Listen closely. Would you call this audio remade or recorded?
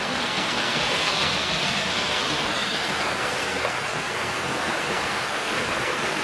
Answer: remade